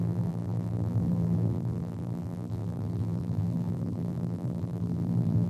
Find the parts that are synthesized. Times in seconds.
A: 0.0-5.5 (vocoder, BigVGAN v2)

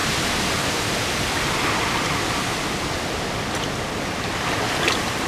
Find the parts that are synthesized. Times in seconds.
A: none